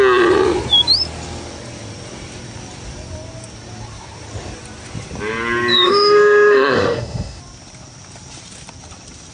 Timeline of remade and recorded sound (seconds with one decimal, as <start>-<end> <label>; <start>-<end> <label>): 0.0-5.7 recorded; 5.7-7.4 remade; 7.4-9.3 recorded